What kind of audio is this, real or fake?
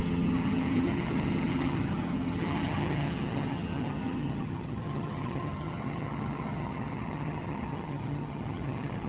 fake